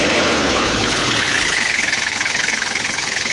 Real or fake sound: fake